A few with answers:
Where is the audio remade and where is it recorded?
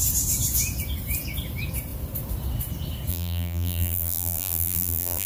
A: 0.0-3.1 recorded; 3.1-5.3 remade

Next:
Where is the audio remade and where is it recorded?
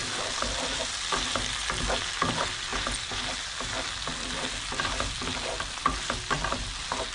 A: 0.0-7.1 recorded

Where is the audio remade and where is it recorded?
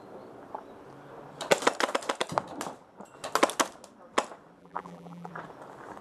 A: 0.0-4.6 recorded; 4.6-5.3 remade; 5.3-6.0 recorded